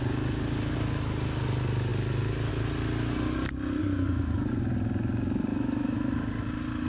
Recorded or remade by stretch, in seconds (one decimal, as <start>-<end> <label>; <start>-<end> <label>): 0.0-3.8 recorded; 3.8-4.5 remade; 4.5-5.5 recorded; 5.5-6.1 remade; 6.1-6.9 recorded